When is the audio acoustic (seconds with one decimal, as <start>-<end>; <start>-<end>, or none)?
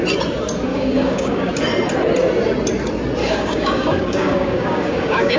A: 0.0-0.7; 1.5-3.2